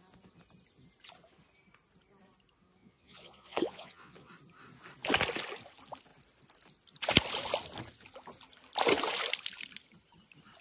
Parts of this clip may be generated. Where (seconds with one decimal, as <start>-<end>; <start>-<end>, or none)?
2.8-4.3